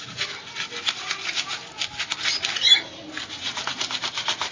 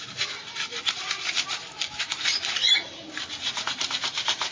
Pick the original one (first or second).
first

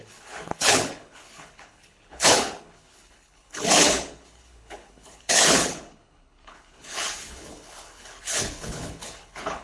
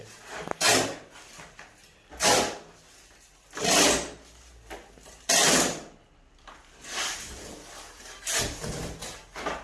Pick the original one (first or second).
second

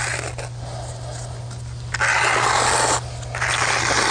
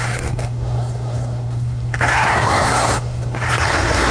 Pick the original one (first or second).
first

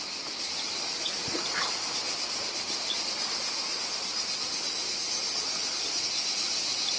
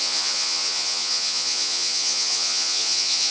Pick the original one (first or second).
first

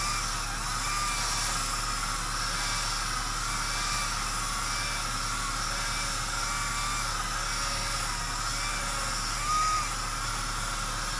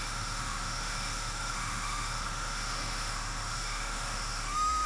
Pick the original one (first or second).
first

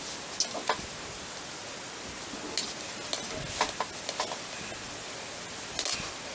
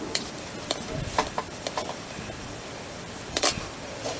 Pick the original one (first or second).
first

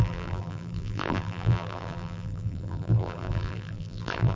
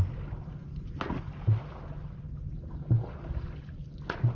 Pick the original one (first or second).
second